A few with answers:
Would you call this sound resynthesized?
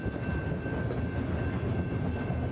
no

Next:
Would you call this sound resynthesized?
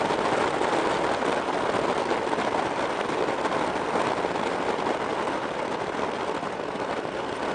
no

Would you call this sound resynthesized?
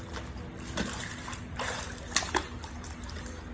no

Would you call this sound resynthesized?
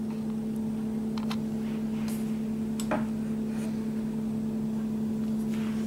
no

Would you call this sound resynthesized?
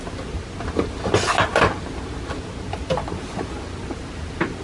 no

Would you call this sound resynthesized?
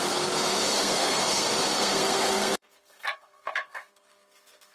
yes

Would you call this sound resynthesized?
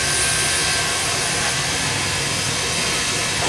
no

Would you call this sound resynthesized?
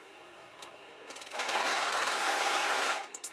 yes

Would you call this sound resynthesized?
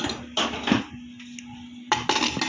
no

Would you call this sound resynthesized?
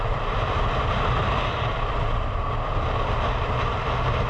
no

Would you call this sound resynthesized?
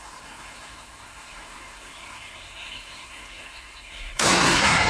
yes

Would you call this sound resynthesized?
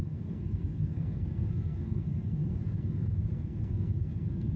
yes